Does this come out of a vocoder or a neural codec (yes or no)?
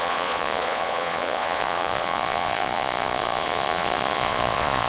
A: yes